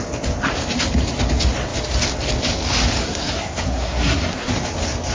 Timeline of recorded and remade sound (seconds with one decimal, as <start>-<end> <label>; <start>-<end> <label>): 0.0-3.0 recorded; 3.0-4.5 remade; 4.5-5.1 recorded